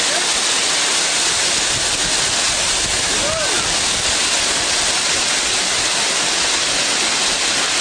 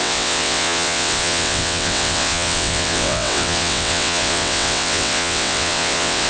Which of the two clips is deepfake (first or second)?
second